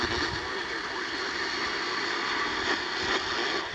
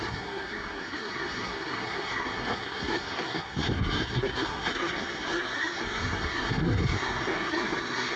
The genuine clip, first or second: first